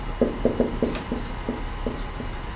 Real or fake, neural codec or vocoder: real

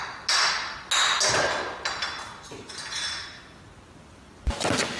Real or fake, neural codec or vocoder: real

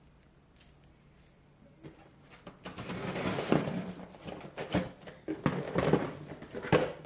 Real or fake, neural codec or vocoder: real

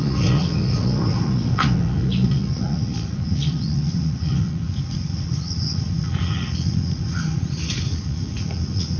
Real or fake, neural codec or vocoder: fake, vocoder, Vocos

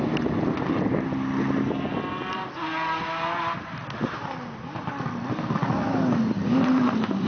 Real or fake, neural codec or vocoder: real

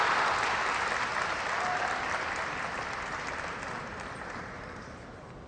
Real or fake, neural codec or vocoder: real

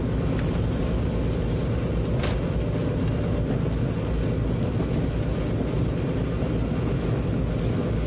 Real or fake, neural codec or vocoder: real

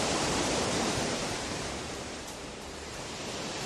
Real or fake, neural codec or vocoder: fake, vocoder, BigVGAN v2